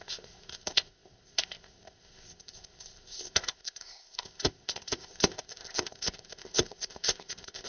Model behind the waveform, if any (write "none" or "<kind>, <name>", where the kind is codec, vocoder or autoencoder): codec, ZipCodec